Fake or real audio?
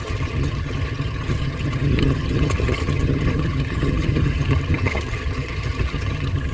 fake